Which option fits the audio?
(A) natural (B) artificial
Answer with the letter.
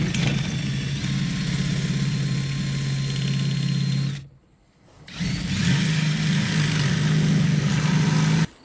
A